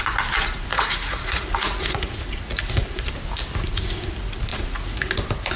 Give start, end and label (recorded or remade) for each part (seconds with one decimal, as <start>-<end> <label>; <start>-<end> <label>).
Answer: 0.0-0.7 recorded; 0.7-3.1 remade; 3.1-4.5 recorded; 4.5-5.1 remade; 5.1-5.6 recorded